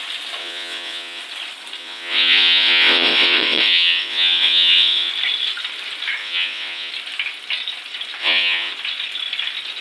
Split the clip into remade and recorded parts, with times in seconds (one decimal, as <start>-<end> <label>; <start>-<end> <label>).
0.0-0.4 recorded; 0.4-1.2 remade; 1.2-1.8 recorded; 1.8-5.1 remade; 5.1-6.2 recorded; 6.2-6.9 remade; 6.9-8.2 recorded; 8.2-8.7 remade; 8.7-9.8 recorded